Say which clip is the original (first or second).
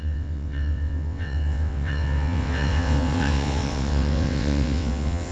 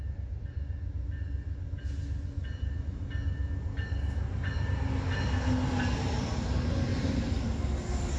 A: second